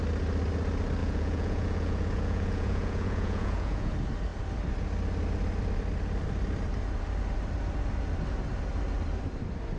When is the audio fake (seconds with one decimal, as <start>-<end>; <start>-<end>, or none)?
1.0-3.9